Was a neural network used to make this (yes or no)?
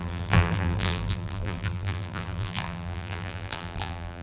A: yes